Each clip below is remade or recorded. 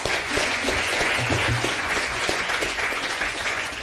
remade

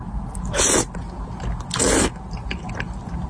recorded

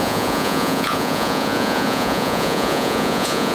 remade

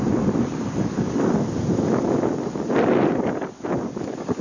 recorded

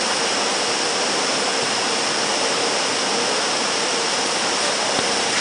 recorded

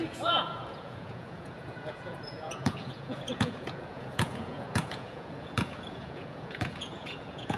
remade